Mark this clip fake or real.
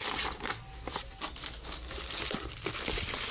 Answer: real